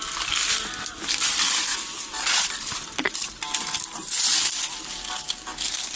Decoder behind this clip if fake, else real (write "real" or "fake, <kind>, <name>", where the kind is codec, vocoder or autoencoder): real